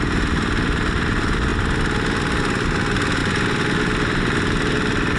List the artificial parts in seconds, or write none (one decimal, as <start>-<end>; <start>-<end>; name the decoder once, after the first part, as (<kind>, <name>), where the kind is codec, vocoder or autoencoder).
none